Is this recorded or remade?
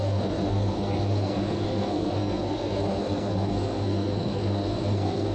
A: remade